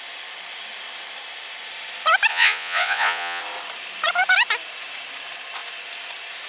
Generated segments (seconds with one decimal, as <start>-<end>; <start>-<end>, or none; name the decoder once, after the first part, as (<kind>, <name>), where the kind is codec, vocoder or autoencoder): 2.3-3.4 (vocoder, Vocos)